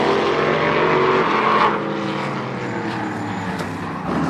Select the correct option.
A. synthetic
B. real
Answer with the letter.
B